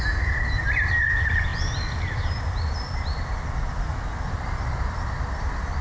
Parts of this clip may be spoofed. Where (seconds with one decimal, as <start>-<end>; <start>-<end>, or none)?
none